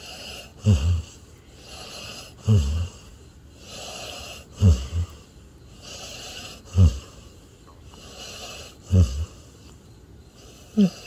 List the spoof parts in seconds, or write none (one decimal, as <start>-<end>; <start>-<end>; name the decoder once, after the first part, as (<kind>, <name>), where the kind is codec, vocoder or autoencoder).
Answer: none

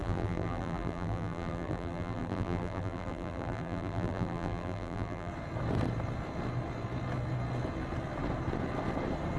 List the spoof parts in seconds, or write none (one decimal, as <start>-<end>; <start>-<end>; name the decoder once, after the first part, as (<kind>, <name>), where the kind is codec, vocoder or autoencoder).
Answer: 0.0-5.3 (vocoder, BigVGAN v2)

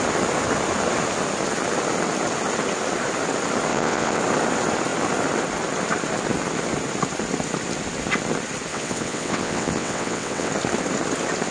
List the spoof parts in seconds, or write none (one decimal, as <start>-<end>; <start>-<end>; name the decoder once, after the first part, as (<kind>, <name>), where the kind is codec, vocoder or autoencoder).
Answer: 3.7-4.2 (vocoder, WaveNeXt); 8.7-10.5

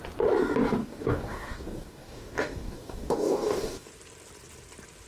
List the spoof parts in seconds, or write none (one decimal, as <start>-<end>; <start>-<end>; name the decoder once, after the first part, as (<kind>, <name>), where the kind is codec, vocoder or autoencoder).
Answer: 0.8-3.9 (codec, DAC)

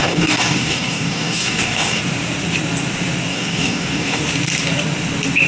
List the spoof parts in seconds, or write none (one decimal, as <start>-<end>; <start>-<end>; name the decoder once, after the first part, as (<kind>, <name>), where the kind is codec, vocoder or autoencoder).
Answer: 0.0-2.0 (codec, DAC); 3.3-4.2

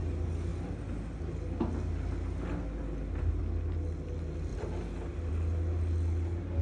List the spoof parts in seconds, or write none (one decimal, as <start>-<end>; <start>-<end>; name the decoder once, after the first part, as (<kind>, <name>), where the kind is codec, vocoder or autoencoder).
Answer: none

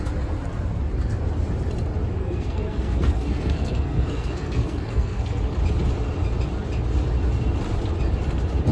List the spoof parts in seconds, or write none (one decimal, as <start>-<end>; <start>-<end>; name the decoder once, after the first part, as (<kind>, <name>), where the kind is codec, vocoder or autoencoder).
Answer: 2.2-5.4 (codec, SNAC)

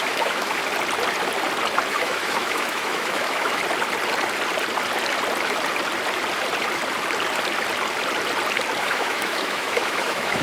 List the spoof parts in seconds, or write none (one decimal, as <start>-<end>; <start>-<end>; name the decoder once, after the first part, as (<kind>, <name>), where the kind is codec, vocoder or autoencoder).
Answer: 0.0-0.6 (autoencoder, DAC-VAE); 1.9-3.6; 8.8-10.4